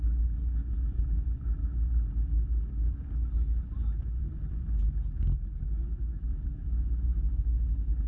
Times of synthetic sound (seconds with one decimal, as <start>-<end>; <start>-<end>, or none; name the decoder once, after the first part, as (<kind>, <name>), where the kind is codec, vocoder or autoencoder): 6.1-7.5 (autoencoder, DAC-VAE)